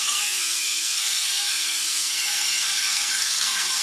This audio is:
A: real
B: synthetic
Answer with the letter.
B